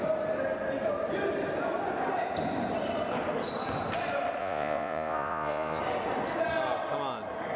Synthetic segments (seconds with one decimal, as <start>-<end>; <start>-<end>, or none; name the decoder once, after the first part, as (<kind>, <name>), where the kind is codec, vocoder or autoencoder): 4.4-5.8 (vocoder, Vocos)